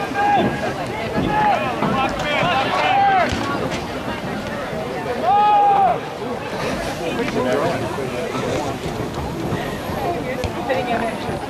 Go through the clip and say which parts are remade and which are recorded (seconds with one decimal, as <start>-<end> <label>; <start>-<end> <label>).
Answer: 0.0-11.5 recorded